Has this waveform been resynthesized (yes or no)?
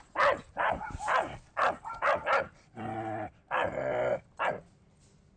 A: no